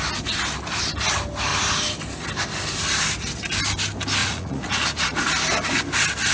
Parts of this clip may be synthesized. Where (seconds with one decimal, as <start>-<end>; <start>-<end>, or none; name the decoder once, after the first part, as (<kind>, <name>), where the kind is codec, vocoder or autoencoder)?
4.2-5.3 (vocoder, Vocos)